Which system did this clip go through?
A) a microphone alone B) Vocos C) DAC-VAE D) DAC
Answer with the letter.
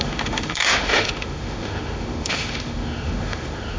C